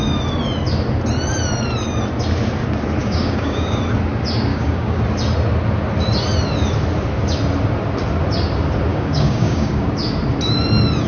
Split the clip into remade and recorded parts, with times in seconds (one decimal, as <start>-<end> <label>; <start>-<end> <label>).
0.0-3.0 recorded; 3.0-3.8 remade; 3.8-4.5 recorded; 4.5-5.0 remade; 5.0-8.9 recorded; 8.9-9.9 remade; 9.9-11.1 recorded